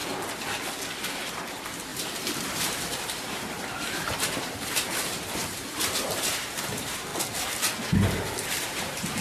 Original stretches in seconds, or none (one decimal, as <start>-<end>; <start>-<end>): 0.0-1.0; 7.1-7.8